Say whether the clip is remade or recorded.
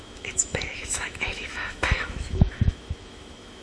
remade